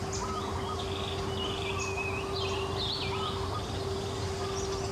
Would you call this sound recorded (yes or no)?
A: yes